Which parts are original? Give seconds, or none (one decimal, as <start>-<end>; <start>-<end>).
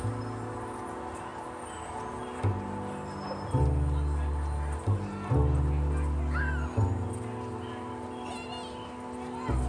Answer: 0.0-9.7